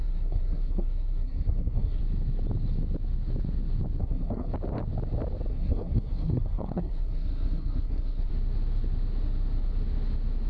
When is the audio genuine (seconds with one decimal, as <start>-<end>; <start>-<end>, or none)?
2.0-4.0; 4.5-5.5; 8.3-10.5